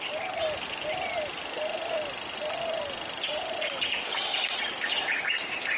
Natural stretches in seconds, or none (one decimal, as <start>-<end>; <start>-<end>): 0.0-5.8